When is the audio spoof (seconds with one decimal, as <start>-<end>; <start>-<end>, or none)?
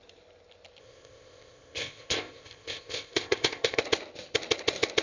0.8-3.8